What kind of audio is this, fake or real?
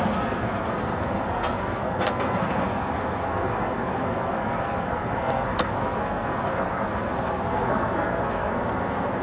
fake